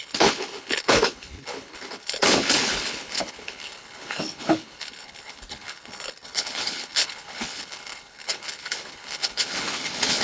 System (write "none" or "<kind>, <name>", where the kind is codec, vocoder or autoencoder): codec, HILCodec